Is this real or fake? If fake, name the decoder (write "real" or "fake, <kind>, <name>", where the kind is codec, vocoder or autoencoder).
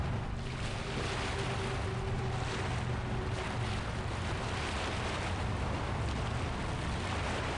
real